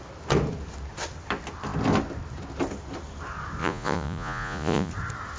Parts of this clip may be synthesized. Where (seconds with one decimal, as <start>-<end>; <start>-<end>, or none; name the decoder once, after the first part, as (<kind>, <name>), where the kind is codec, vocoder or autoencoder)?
3.6-4.9 (vocoder, Vocos)